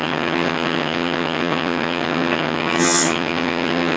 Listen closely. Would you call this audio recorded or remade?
remade